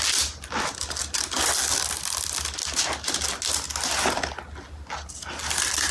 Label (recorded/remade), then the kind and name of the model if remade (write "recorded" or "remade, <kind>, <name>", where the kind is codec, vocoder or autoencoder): recorded